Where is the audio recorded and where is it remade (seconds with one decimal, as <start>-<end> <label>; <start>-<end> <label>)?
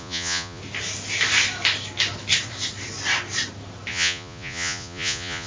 0.0-0.6 remade; 0.6-3.9 recorded; 3.9-5.5 remade